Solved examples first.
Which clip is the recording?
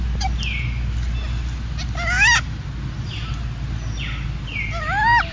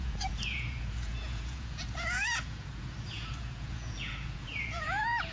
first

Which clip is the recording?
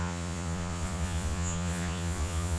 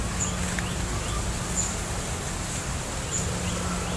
second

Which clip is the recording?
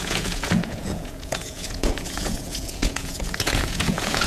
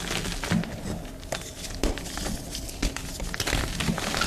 second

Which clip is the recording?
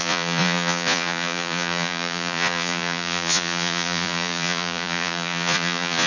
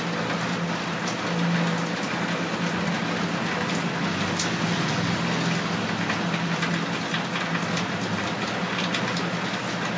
second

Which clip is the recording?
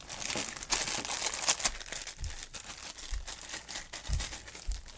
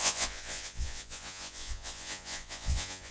first